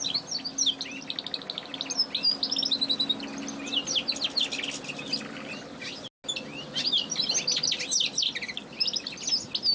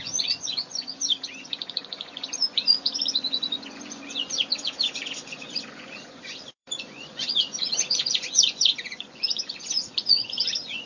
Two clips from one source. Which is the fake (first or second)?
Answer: second